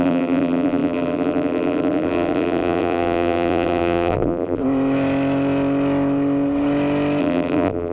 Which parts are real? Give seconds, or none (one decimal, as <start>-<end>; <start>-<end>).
4.6-7.2